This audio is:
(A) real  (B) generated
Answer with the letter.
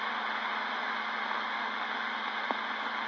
A